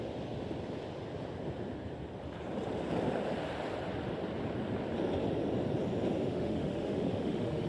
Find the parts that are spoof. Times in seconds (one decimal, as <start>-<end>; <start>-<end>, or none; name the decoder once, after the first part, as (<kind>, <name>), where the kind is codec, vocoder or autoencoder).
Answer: 6.3-7.7 (autoencoder, DAC-VAE)